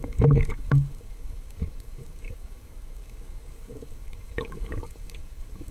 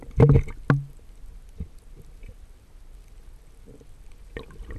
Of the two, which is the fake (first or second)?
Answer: first